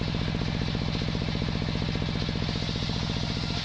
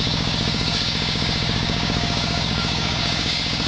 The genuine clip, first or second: first